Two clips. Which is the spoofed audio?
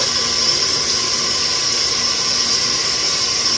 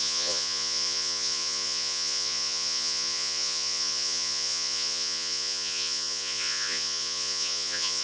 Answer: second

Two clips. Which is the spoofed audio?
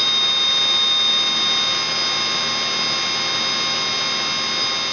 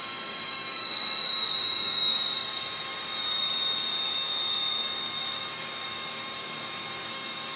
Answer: second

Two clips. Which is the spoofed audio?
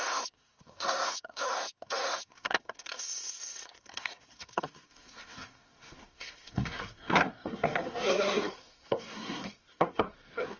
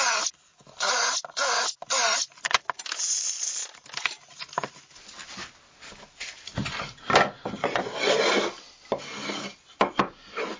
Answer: first